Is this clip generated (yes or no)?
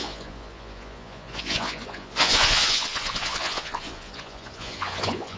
yes